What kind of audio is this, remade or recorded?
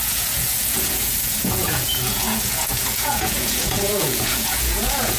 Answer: remade